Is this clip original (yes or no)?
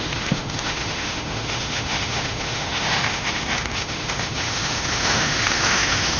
no